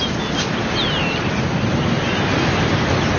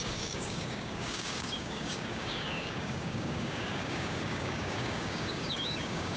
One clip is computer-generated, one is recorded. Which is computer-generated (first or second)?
second